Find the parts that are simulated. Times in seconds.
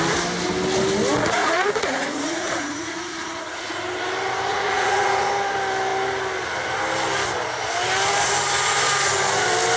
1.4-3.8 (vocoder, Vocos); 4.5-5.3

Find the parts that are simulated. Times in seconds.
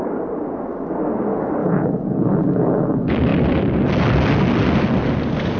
1.6-2.1 (vocoder, Vocos)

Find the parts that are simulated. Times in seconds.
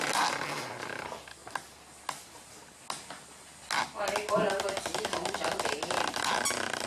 none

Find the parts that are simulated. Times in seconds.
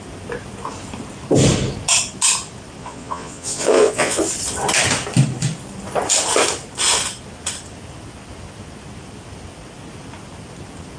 2.8-4.2 (vocoder, Vocos)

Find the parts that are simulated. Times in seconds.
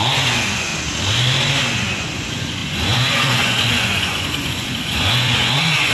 0.0-0.7 (vocoder, Vocos); 1.7-5.9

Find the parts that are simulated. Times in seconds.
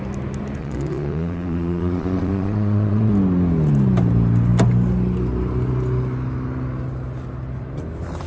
0.6-3.1 (vocoder, Vocos)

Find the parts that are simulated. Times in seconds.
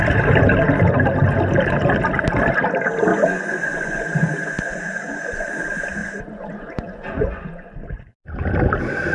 3.1-5.5 (vocoder, Vocos); 6.0-8.1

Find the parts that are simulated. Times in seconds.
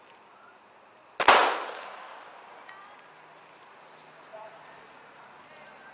4.3-5.3 (vocoder, Vocos)